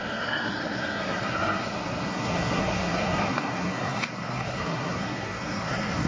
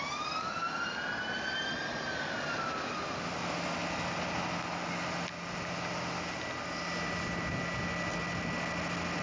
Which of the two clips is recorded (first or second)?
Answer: second